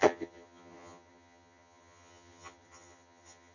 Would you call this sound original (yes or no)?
no